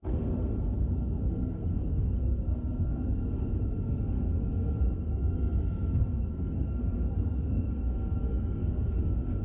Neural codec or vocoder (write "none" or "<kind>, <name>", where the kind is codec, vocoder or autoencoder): codec, SNAC